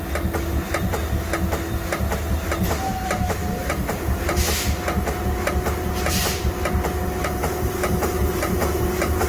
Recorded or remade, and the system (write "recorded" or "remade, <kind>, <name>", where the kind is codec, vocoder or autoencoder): recorded